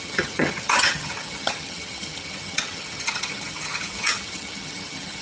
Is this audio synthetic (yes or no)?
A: yes